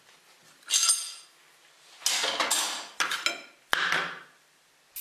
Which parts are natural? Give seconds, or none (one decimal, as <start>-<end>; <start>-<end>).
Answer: 0.0-5.0